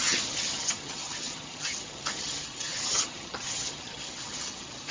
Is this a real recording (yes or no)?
no